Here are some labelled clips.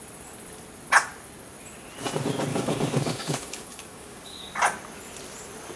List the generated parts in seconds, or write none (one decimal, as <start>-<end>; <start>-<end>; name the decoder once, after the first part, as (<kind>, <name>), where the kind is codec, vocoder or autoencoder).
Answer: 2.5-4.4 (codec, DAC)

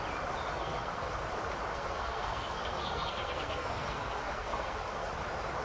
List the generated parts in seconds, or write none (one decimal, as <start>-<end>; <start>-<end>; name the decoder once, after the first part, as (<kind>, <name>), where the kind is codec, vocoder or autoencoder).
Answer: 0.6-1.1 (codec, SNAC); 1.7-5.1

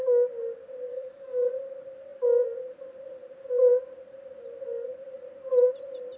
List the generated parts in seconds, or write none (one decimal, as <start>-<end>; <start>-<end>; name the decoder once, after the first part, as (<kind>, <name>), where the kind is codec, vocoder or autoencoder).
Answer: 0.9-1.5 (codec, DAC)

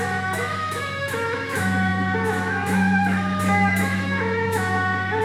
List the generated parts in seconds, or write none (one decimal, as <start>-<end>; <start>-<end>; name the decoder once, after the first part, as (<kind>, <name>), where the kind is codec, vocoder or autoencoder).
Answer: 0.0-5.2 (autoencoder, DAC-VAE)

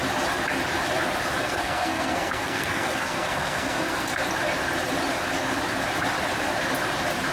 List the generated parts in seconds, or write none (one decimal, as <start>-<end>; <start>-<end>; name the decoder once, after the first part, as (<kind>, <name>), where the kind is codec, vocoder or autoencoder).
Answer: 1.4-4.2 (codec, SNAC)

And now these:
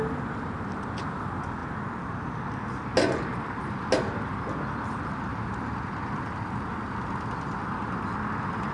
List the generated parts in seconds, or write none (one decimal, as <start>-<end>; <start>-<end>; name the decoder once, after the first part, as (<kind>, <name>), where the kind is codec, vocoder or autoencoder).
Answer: none

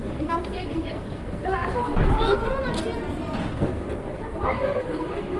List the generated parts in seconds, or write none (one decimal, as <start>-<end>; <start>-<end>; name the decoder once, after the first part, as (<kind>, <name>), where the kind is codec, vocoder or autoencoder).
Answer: 0.0-2.5 (codec, SNAC); 3.5-5.4

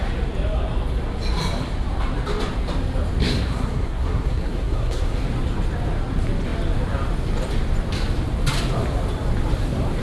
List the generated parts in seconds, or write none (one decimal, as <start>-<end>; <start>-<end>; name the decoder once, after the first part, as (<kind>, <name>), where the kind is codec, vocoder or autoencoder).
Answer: 3.2-5.2 (codec, SNAC)